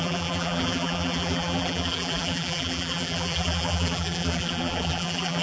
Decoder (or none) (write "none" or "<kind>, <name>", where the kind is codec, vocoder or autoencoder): vocoder, BigVGAN v2